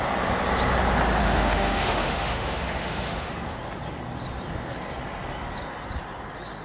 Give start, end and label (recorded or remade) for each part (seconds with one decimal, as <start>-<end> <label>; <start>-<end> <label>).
0.0-1.2 recorded; 1.2-3.3 remade; 3.3-6.6 recorded